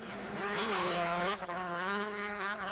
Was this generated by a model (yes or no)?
yes